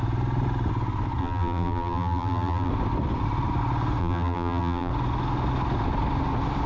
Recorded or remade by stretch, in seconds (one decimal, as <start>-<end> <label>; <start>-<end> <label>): 0.0-1.2 recorded; 1.2-2.7 remade; 2.7-4.0 recorded; 4.0-4.9 remade; 4.9-6.7 recorded